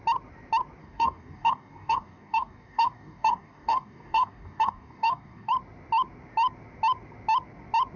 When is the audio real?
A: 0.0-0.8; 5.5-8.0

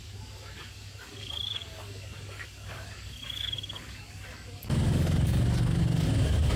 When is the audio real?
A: none

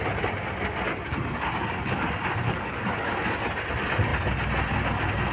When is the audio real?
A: 0.0-0.9; 3.4-5.3

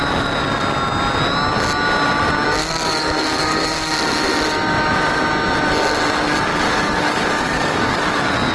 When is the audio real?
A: 0.0-2.6; 3.9-6.5; 8.0-8.5

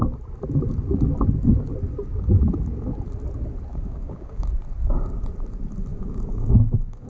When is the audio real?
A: 0.0-3.7; 4.5-5.9

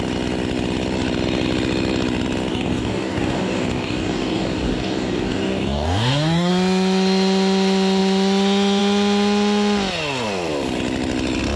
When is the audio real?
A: 0.0-2.5; 6.5-11.6